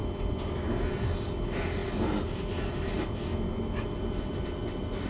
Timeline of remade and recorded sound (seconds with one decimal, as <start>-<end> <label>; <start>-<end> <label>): 0.0-5.1 recorded